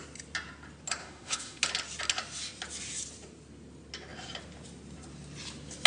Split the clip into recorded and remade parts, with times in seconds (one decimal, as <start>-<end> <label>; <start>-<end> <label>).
0.0-1.0 recorded; 1.0-1.6 remade; 1.6-5.9 recorded